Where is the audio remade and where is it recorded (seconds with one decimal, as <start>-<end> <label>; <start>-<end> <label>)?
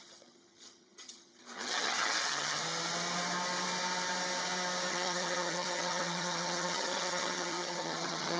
0.0-2.6 remade; 2.6-4.9 recorded; 4.9-8.4 remade